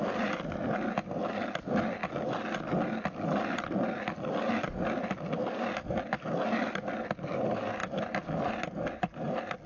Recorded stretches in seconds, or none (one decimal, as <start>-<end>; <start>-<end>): 0.0-9.7